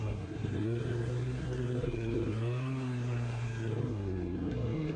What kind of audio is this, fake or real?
fake